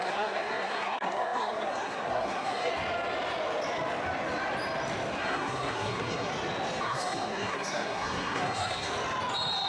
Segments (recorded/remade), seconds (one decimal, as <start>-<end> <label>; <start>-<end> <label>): 0.0-2.7 remade; 2.7-5.2 recorded; 5.2-6.3 remade; 6.3-6.8 recorded; 6.8-8.9 remade; 8.9-9.7 recorded